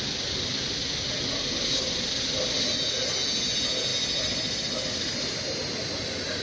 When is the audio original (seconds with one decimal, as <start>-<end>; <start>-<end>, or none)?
0.0-6.4